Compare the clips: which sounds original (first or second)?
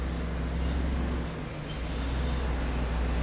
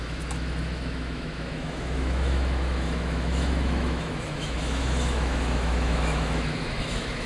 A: first